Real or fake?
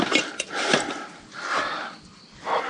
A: real